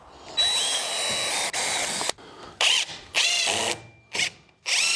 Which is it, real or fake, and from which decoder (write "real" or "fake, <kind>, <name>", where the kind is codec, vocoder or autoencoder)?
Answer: real